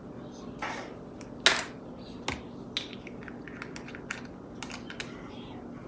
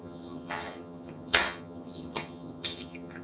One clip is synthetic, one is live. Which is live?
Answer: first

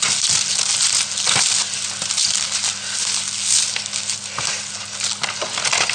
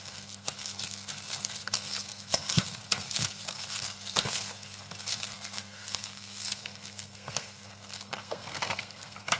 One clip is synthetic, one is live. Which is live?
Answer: first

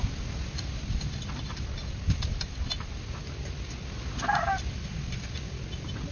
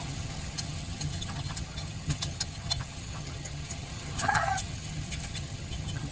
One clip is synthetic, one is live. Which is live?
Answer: first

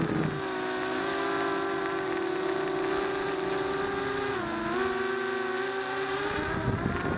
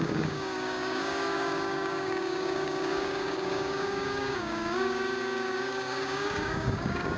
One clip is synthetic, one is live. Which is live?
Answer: first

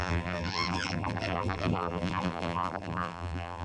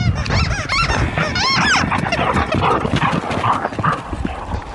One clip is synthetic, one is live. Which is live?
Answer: second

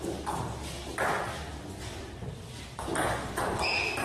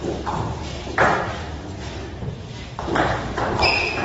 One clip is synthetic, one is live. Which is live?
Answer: first